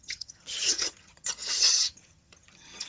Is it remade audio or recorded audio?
remade